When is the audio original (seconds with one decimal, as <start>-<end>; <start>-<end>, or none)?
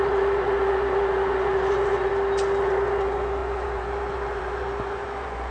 2.1-2.6